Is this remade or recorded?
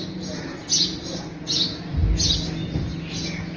recorded